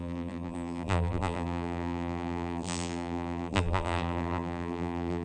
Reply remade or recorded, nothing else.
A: remade